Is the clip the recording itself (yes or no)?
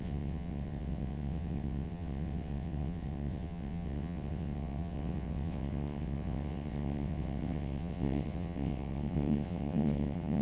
no